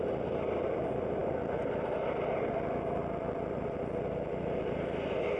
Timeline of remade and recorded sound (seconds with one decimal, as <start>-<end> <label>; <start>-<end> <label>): 0.0-5.4 recorded